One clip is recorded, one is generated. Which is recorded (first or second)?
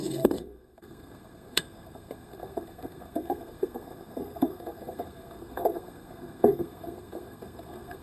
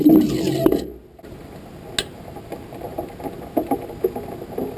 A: second